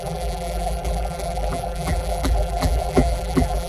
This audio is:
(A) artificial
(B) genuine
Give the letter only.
A